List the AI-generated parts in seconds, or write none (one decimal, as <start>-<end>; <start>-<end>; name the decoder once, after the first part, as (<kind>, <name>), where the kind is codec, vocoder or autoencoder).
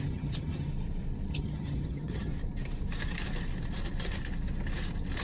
0.0-0.7 (vocoder, HiFi-GAN); 1.3-2.3